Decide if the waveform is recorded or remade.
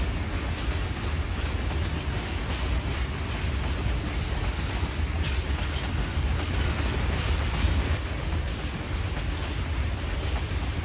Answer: recorded